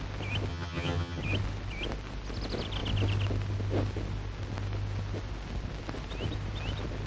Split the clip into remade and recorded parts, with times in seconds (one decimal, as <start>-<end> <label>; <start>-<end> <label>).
0.0-0.5 recorded; 0.5-1.2 remade; 1.2-7.1 recorded